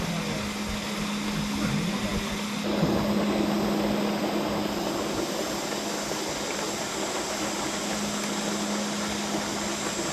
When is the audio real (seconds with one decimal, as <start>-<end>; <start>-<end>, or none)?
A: 0.0-10.1